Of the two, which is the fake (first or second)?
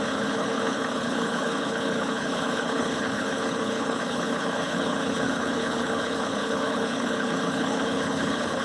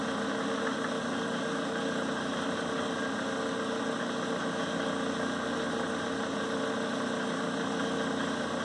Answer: first